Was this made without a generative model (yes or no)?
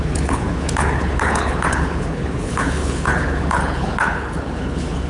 no